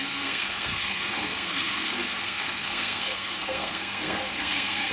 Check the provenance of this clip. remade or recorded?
remade